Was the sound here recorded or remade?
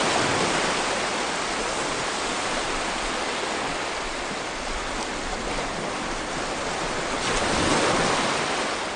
recorded